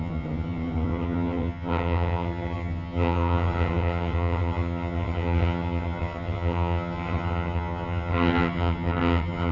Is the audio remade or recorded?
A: remade